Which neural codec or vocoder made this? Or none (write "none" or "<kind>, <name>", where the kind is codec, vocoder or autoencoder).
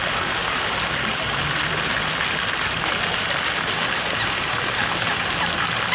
none